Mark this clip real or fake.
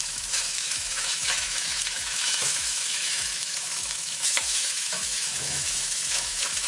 fake